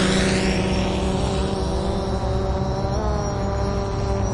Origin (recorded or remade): recorded